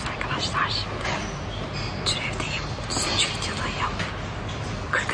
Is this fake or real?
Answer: real